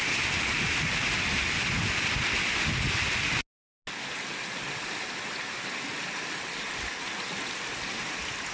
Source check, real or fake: real